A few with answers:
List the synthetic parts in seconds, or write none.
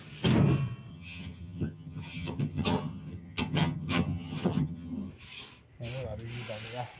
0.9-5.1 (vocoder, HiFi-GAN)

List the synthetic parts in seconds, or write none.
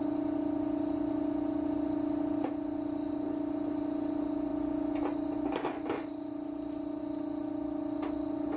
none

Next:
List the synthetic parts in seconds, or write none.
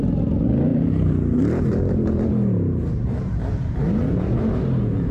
0.7-3.8 (vocoder, BigVGAN v2)